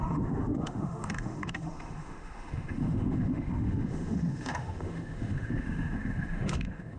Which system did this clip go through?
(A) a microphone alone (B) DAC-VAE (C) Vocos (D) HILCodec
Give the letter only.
B